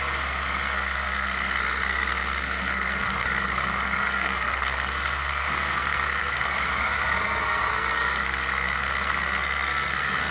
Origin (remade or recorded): remade